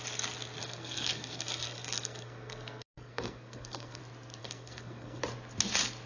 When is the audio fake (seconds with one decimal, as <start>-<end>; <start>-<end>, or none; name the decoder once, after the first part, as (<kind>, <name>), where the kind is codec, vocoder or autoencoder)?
0.6-4.0 (codec, SNAC); 4.4-5.2